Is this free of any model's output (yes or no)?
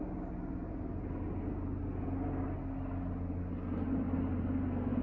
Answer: yes